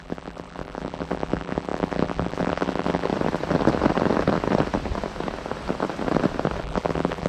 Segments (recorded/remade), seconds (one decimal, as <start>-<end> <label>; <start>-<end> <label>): 0.0-3.1 remade; 3.1-6.6 recorded; 6.6-7.3 remade